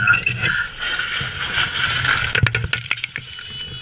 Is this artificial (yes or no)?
no